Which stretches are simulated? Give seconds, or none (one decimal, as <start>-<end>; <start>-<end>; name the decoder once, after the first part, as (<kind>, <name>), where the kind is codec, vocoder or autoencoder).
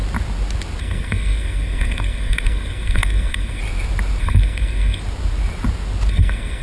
0.8-3.6 (codec, SNAC); 4.2-5.0; 6.1-6.6